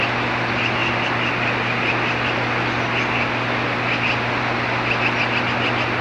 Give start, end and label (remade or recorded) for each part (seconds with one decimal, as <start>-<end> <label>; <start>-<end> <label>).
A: 0.0-6.0 recorded